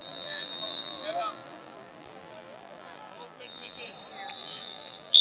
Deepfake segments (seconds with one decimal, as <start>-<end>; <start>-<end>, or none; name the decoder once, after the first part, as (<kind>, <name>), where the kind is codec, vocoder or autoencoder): 0.0-3.8 (vocoder, BigVGAN v2); 4.3-5.2